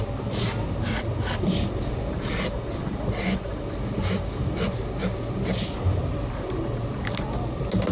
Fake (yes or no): no